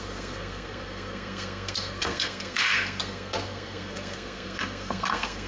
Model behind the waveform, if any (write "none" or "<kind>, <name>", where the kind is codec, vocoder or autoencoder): codec, SNAC